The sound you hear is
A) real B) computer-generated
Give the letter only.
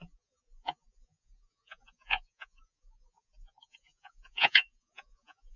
B